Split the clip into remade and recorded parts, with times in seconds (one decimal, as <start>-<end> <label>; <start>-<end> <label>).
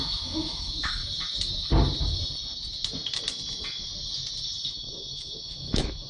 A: 0.0-1.0 remade; 1.0-4.7 recorded; 4.7-6.1 remade